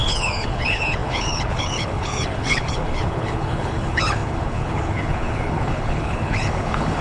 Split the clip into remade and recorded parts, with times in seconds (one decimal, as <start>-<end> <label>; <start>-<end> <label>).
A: 0.0-7.0 remade